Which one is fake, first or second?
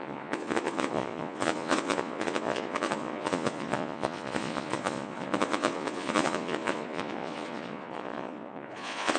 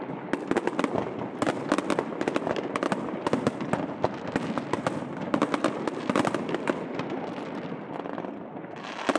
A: first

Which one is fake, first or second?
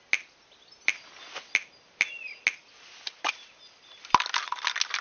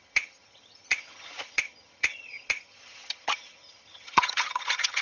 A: second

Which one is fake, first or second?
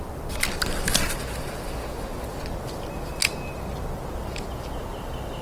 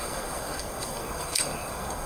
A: second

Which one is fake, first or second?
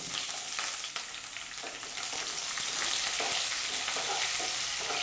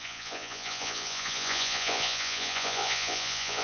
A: second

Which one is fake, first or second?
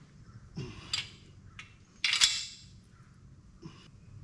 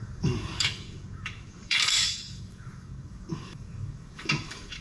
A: second